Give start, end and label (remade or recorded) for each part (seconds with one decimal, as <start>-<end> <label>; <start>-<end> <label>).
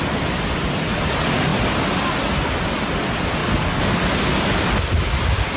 0.0-5.6 recorded